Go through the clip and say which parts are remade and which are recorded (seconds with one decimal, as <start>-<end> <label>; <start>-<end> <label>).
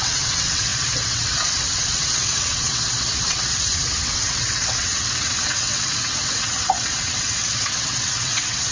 0.0-8.7 remade